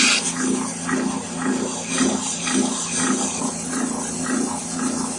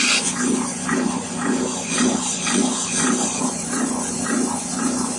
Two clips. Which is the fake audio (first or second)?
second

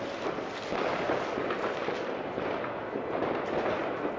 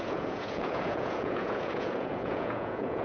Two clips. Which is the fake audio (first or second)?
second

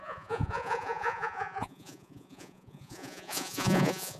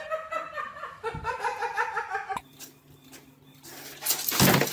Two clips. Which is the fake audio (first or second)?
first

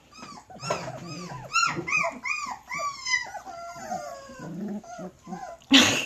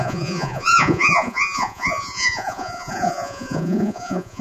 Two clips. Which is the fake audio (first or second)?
second